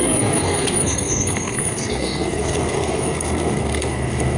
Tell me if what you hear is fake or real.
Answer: fake